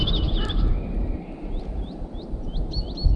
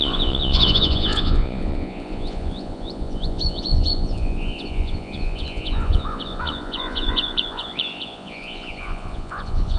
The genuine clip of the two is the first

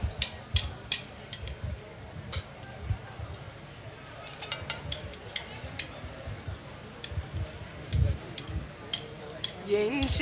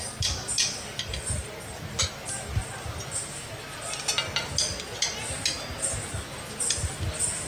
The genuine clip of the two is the second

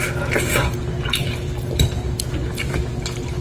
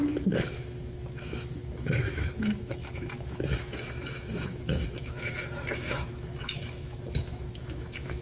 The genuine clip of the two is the first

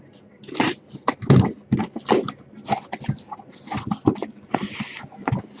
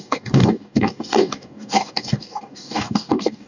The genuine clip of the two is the first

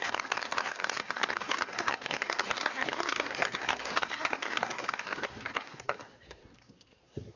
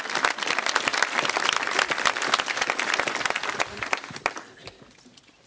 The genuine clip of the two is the second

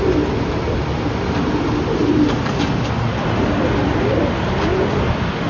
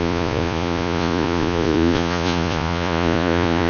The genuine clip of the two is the first